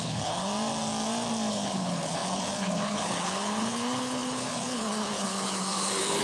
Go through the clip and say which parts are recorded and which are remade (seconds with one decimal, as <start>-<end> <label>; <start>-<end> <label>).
0.0-0.5 remade; 0.5-1.5 recorded; 1.5-6.2 remade